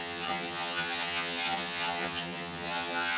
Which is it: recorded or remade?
remade